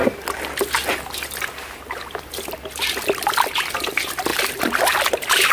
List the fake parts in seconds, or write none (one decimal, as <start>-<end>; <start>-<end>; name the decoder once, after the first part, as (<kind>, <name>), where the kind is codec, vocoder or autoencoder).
none